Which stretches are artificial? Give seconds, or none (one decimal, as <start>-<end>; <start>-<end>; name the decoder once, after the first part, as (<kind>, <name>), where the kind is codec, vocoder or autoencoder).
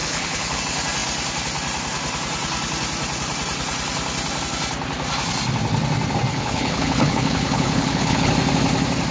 0.0-0.6 (codec, HILCodec); 6.3-8.3